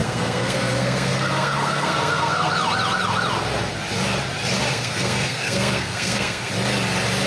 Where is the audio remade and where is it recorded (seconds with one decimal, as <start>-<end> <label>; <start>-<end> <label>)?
0.0-2.5 remade; 2.5-4.7 recorded; 4.7-6.5 remade; 6.5-7.3 recorded